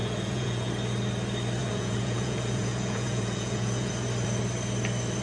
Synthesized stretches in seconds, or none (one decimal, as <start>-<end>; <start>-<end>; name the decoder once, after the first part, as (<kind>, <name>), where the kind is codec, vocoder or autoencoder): 0.0-0.7 (vocoder, Vocos); 1.6-3.9